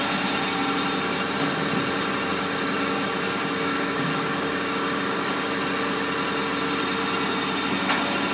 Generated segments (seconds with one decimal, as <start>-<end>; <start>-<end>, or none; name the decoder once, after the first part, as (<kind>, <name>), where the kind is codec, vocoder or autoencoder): 2.3-5.5 (codec, DAC)